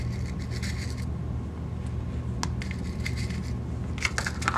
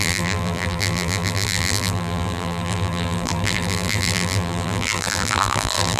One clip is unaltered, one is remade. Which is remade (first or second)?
second